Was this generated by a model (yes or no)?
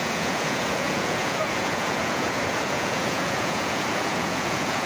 yes